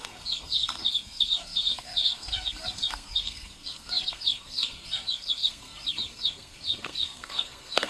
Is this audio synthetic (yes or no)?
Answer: yes